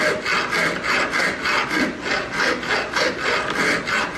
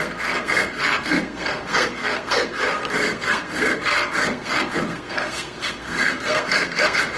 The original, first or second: first